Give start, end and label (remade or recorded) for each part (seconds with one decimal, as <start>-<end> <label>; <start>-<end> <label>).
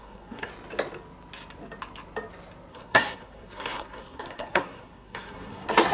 0.0-0.5 remade; 0.5-2.7 recorded; 2.7-5.9 remade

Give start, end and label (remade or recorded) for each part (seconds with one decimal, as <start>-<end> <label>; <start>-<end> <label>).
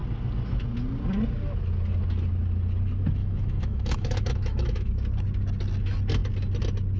0.0-3.2 recorded; 3.2-4.9 remade; 4.9-7.0 recorded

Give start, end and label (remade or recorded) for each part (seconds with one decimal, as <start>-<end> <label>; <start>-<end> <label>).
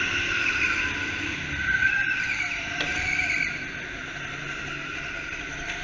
0.0-5.8 recorded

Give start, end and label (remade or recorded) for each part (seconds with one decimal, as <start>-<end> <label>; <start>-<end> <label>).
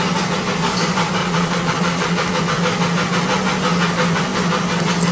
0.0-1.2 recorded; 1.2-2.4 remade; 2.4-5.1 recorded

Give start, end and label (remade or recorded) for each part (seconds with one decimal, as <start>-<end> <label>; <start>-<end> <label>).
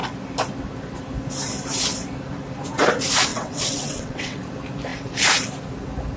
0.0-3.3 recorded; 3.3-4.4 remade; 4.4-6.2 recorded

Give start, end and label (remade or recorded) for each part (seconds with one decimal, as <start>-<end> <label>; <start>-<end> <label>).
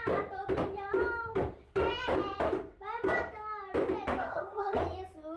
0.0-4.2 recorded; 4.2-4.8 remade; 4.8-5.4 recorded